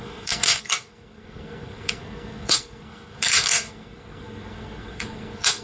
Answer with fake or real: fake